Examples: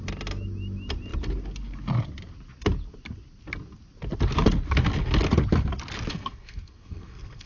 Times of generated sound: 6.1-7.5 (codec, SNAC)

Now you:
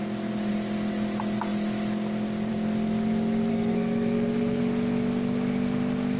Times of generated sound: 3.5-4.6 (codec, SNAC)

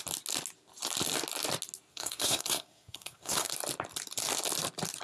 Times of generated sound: 1.9-3.5 (codec, SNAC)

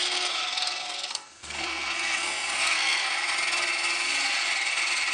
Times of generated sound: 0.0-3.1 (codec, SNAC)

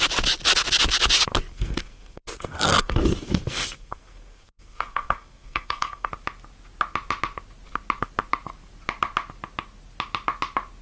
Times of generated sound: 1.5-6.1 (codec, SNAC)

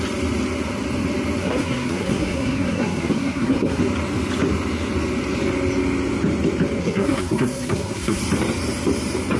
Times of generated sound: 1.4-3.8 (codec, SNAC); 6.8-8.2